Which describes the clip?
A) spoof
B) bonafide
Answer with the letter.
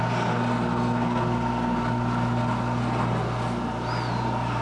B